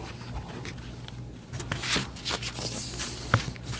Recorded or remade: recorded